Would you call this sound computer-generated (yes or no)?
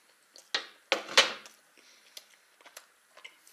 no